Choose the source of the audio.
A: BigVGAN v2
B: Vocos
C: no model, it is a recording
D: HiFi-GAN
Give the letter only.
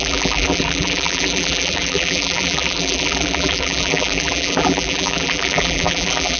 A